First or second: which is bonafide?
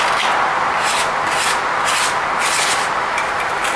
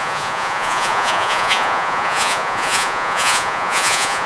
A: first